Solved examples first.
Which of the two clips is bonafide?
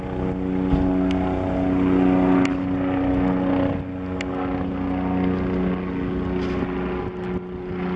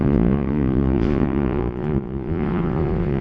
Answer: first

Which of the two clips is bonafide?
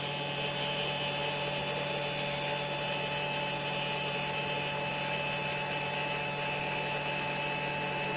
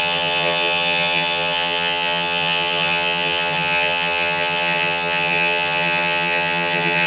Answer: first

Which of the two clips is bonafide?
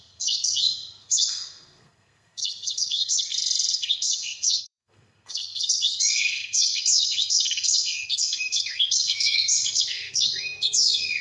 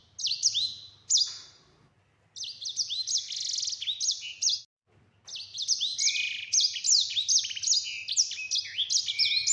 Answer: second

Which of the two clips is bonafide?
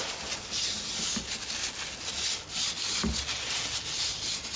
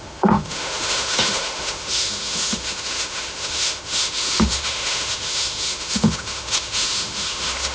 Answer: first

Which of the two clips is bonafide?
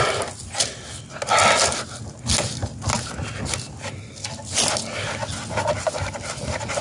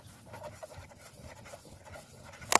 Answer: first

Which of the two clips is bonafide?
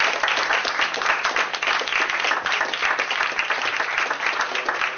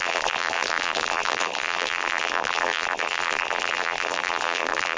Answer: first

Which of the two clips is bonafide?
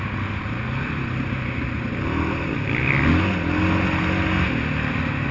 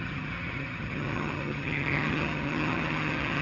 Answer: first